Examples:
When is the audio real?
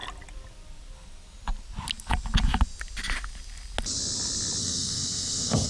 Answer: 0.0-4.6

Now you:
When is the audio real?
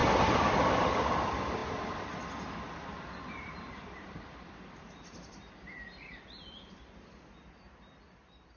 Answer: 0.0-8.6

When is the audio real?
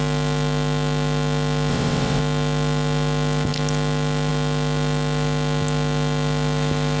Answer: 0.0-1.7; 2.2-7.0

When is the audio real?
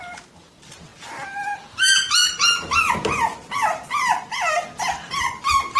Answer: 0.0-5.8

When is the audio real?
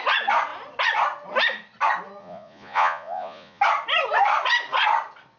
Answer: 0.0-2.2; 3.6-5.4